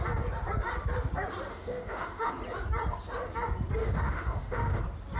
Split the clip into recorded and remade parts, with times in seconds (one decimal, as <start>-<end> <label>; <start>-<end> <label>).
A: 0.0-1.5 recorded; 1.5-2.3 remade; 2.3-3.8 recorded; 3.8-4.8 remade; 4.8-5.2 recorded

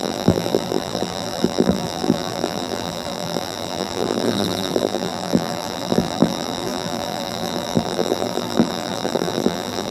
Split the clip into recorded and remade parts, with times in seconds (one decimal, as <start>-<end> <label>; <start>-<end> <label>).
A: 0.0-9.9 remade

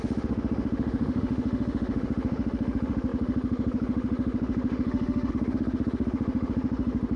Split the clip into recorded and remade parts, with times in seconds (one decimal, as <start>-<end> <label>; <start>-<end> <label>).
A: 0.0-7.2 remade

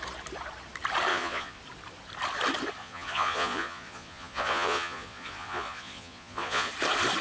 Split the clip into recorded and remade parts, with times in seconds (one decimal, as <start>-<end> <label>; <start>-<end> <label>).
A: 0.0-1.1 recorded; 1.1-1.6 remade; 1.6-2.8 recorded; 2.8-6.7 remade; 6.7-7.2 recorded

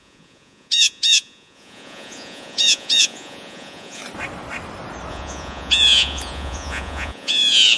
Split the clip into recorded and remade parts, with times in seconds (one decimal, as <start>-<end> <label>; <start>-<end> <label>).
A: 0.0-4.0 remade; 4.0-5.1 recorded; 5.1-7.8 remade

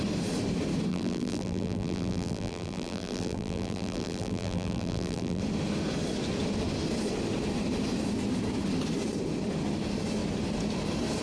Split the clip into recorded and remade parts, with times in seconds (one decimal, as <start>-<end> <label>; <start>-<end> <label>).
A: 0.0-0.9 recorded; 0.9-5.4 remade; 5.4-11.2 recorded

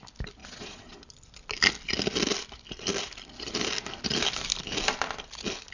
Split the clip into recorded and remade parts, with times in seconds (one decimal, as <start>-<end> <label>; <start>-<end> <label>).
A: 0.0-0.4 recorded; 0.4-1.0 remade; 1.0-5.7 recorded

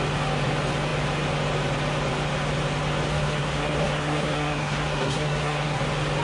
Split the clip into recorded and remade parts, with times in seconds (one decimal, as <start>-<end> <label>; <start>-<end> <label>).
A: 0.0-3.1 recorded; 3.1-5.8 remade; 5.8-6.2 recorded